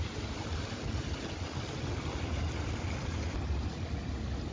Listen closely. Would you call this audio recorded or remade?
recorded